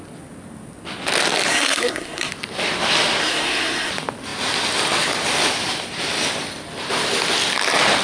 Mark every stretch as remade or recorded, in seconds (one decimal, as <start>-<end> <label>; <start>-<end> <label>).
0.0-1.5 recorded; 1.5-2.3 remade; 2.3-3.2 recorded; 3.2-3.9 remade; 3.9-8.0 recorded